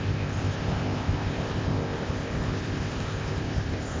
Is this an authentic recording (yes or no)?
no